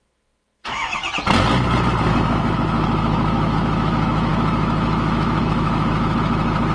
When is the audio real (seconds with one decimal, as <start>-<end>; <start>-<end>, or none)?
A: 1.0-2.0